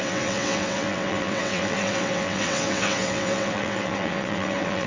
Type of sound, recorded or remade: remade